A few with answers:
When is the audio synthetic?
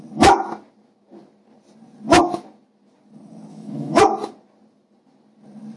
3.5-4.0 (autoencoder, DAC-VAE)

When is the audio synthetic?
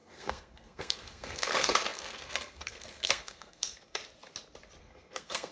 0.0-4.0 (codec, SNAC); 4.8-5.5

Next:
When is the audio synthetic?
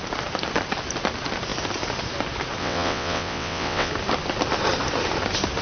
2.6-3.9 (vocoder, WaveNeXt)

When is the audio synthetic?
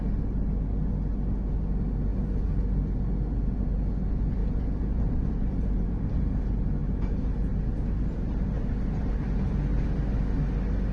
4.4-6.1 (vocoder, BigVGAN v2); 6.8-9.1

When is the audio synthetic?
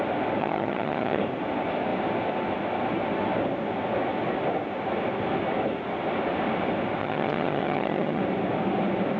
0.4-1.2 (vocoder, HiFi-GAN); 7.0-8.2